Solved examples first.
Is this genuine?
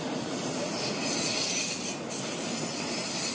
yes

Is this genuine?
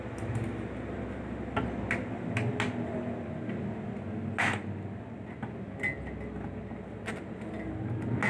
yes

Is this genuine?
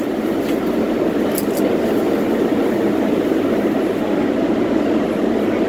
yes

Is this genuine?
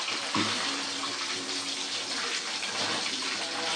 yes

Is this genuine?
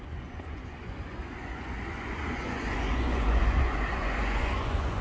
no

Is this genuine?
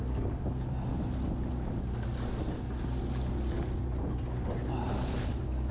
yes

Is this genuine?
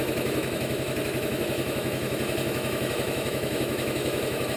no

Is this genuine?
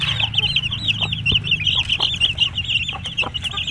yes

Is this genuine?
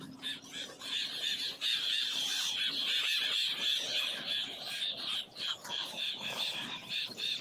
no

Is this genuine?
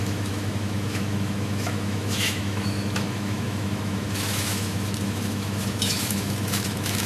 no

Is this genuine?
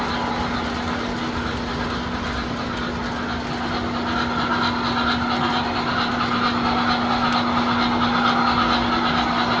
yes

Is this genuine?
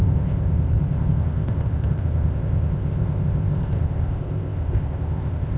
no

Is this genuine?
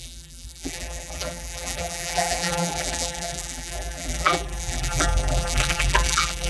no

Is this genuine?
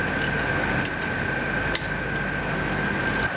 yes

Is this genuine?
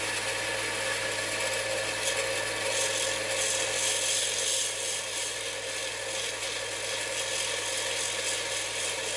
yes